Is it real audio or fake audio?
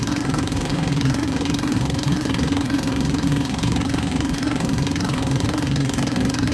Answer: fake